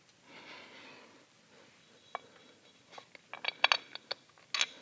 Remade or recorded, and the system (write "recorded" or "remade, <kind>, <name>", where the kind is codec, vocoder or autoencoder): recorded